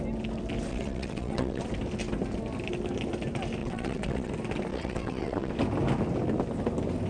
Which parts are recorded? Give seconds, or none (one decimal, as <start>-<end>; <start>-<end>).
0.0-0.7; 1.6-3.6; 4.3-4.7; 5.5-7.1